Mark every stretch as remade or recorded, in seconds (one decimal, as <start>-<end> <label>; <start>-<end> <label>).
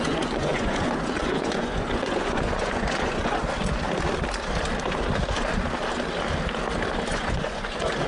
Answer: 0.0-3.4 remade; 3.4-7.1 recorded; 7.1-8.1 remade